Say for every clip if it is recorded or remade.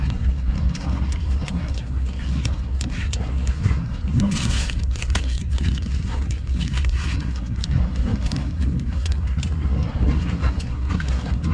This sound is remade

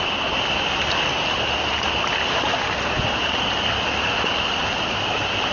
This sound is recorded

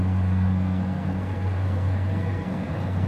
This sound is remade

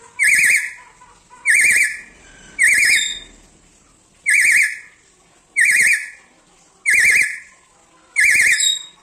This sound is recorded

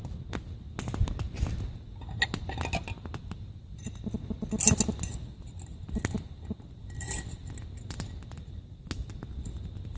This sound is recorded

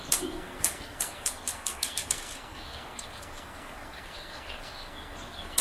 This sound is remade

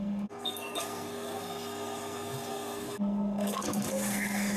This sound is remade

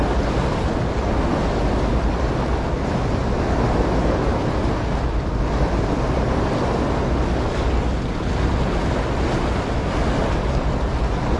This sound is recorded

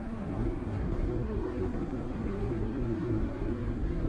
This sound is remade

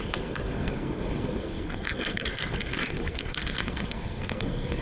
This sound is remade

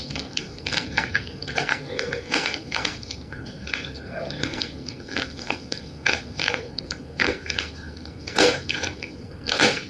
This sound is remade